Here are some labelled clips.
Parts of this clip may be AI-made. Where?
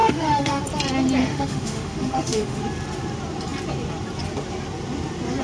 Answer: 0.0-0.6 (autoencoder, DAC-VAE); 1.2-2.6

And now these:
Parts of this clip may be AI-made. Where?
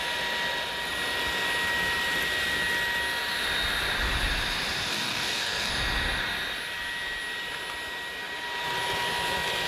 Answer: 4.9-5.7 (codec, DAC)